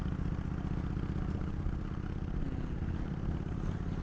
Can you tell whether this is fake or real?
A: real